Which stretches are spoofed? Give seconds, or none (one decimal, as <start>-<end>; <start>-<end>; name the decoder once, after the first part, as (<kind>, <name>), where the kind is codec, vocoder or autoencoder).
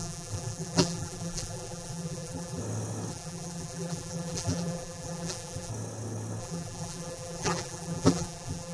0.0-2.6 (vocoder, BigVGAN v2); 3.1-5.7; 6.4-8.7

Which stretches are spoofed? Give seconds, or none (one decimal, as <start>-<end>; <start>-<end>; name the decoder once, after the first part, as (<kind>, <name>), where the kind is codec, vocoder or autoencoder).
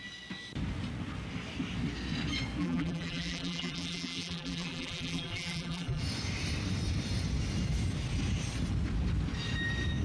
2.6-6.0 (vocoder, BigVGAN v2)